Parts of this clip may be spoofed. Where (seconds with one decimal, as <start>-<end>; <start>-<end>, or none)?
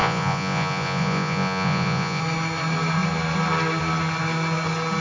0.0-2.2